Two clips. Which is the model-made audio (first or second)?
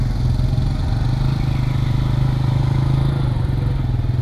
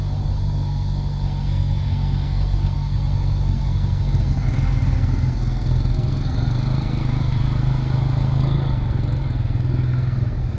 second